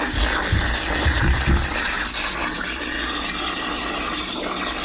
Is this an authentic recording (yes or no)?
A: yes